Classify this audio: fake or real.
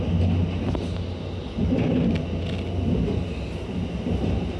real